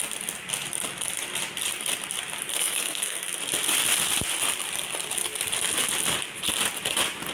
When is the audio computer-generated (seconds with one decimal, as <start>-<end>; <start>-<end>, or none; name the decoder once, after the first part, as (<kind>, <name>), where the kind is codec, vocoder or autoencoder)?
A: 2.5-3.4 (codec, SNAC)